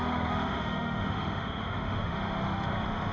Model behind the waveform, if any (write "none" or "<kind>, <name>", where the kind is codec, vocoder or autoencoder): autoencoder, DAC-VAE